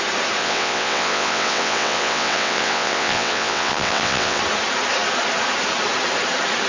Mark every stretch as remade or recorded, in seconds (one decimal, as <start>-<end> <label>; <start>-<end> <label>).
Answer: 0.0-0.4 recorded; 0.4-4.4 remade; 4.4-6.7 recorded